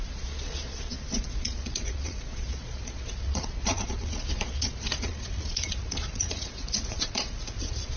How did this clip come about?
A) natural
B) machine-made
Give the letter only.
B